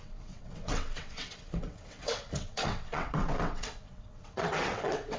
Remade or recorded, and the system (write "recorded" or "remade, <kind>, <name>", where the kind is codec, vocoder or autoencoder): remade, vocoder, WaveNeXt